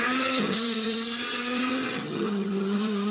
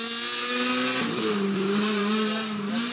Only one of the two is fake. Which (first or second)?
first